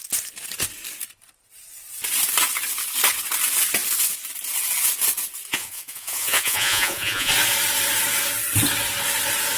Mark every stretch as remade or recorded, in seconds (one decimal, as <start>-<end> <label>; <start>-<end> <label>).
0.0-5.5 recorded; 5.5-7.3 remade; 7.3-9.6 recorded